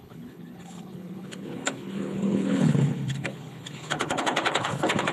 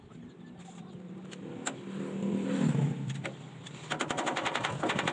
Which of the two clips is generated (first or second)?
first